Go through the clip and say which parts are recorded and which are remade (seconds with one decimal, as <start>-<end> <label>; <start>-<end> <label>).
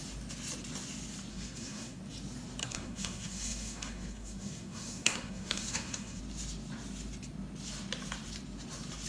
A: 0.0-1.3 recorded; 1.3-2.0 remade; 2.0-2.6 recorded; 2.6-6.2 remade; 6.2-9.1 recorded